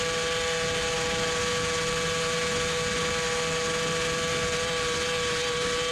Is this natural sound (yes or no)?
yes